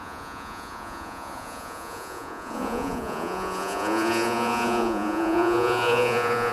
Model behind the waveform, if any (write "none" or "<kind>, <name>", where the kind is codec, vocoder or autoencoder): vocoder, Vocos